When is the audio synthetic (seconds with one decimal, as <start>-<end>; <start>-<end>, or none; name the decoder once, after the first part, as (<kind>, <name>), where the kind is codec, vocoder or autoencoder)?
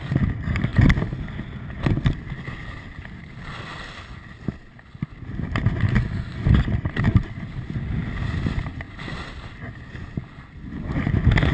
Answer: none